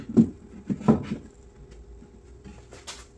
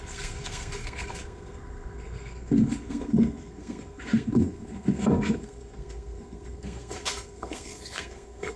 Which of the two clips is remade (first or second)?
second